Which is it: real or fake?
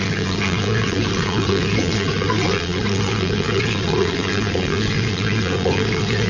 fake